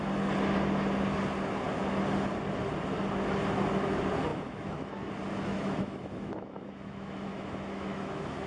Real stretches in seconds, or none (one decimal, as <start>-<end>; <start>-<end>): 0.0-4.3; 5.1-5.5